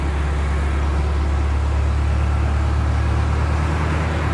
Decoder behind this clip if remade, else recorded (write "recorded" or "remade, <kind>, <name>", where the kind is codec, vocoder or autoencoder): recorded